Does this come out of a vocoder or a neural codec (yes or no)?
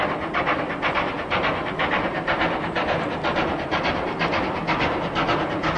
no